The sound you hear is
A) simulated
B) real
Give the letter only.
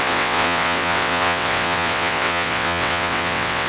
A